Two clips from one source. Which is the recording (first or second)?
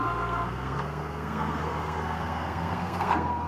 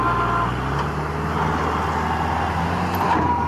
second